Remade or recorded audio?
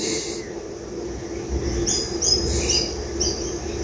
recorded